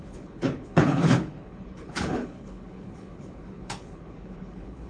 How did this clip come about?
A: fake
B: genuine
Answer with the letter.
A